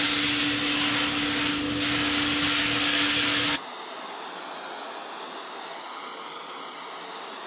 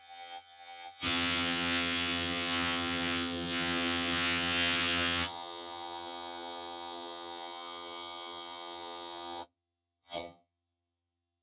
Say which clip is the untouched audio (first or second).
first